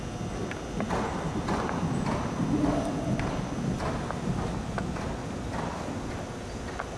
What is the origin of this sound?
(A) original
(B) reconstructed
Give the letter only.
A